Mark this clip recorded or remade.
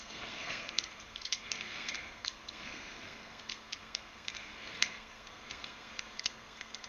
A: remade